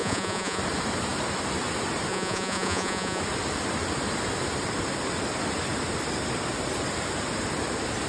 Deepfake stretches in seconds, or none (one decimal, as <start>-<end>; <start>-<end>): 0.0-0.6; 2.1-3.2